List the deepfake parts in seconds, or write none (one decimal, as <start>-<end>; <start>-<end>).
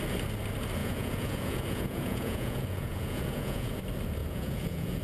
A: 0.8-3.8; 4.2-5.0